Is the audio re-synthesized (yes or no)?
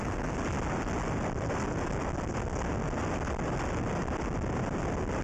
no